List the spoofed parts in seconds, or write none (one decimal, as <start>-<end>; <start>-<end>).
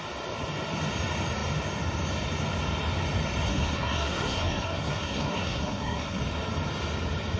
3.5-6.2